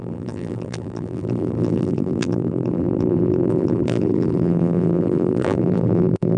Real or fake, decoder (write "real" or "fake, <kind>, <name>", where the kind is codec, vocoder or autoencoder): fake, vocoder, BigVGAN v2